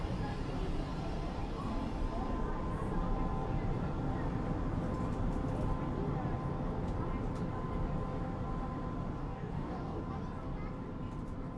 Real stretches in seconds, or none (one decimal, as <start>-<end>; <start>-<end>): 0.0-9.2; 10.0-11.6